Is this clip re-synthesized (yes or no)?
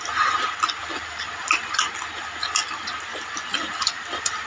no